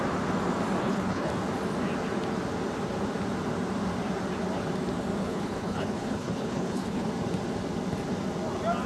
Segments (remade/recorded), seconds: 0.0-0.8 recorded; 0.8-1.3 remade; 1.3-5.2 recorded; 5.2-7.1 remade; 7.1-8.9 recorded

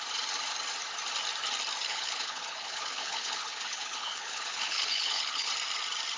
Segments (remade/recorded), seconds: 0.0-1.8 recorded; 1.8-5.5 remade; 5.5-6.2 recorded

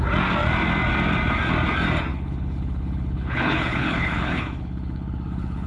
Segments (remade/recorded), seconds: 0.0-2.1 recorded; 2.1-5.7 remade

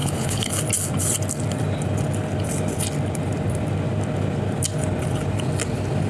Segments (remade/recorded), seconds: 0.0-0.5 remade; 0.5-6.1 recorded